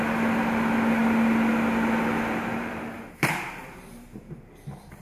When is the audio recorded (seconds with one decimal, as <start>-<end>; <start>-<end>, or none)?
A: 0.0-2.5; 4.4-5.0